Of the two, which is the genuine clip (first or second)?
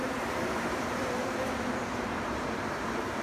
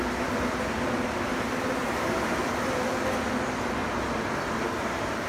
second